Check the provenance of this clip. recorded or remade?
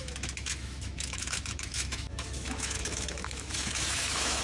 remade